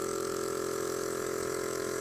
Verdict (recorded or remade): remade